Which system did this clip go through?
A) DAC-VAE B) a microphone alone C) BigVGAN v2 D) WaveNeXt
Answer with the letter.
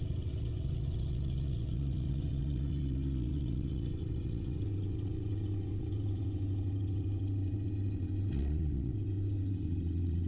D